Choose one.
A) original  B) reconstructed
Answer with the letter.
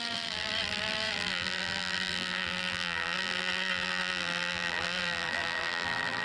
B